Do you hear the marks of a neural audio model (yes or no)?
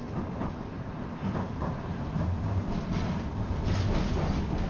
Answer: no